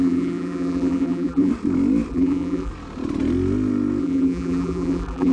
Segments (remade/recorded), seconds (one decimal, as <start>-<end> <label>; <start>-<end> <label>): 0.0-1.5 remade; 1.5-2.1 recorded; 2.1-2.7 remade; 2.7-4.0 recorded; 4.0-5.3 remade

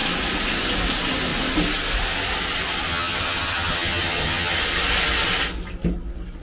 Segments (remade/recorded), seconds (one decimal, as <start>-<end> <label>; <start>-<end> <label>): 0.0-2.9 recorded; 2.9-4.6 remade; 4.6-6.4 recorded

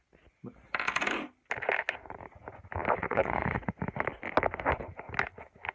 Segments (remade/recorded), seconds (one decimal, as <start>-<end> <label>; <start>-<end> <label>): 0.0-3.0 recorded; 3.0-3.8 remade; 3.8-5.7 recorded

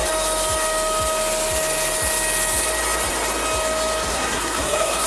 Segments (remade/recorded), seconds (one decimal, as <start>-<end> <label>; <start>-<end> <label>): 0.0-4.1 recorded; 4.1-5.1 remade

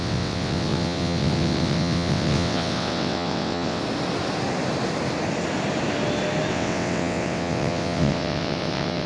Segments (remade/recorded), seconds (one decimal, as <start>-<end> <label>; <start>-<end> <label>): 0.0-3.8 remade; 3.8-6.5 recorded; 6.5-9.1 remade